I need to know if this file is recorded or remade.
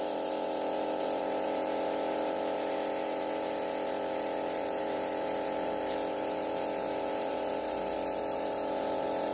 remade